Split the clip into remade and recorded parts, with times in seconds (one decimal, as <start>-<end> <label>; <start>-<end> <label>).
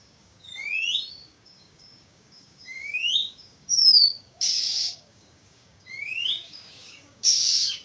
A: 0.0-0.5 remade; 0.5-1.1 recorded; 1.1-7.8 remade